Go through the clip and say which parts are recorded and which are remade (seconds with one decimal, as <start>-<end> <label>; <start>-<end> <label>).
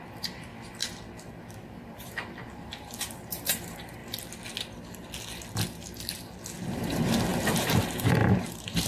0.0-0.5 remade; 0.5-1.3 recorded; 1.3-4.0 remade; 4.0-6.7 recorded; 6.7-8.9 remade